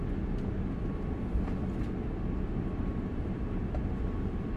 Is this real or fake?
real